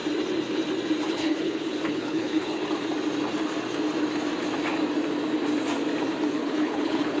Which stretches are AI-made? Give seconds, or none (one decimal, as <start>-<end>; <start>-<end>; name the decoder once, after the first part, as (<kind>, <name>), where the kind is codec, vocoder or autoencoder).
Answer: 1.1-2.6 (codec, HILCodec); 6.3-7.2